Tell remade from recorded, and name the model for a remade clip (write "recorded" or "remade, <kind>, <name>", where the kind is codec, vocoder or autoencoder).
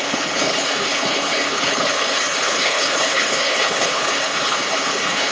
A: remade, codec, HILCodec